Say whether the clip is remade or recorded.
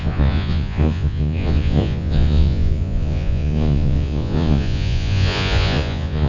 remade